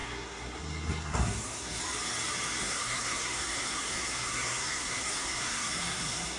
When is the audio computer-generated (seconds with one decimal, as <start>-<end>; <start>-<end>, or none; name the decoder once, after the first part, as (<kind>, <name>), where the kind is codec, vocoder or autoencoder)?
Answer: 0.0-1.8 (codec, SNAC); 2.6-6.4